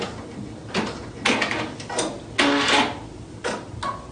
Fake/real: real